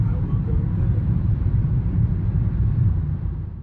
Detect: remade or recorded remade